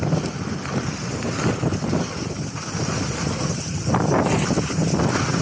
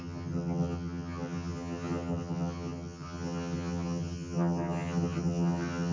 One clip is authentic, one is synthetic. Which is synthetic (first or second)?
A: second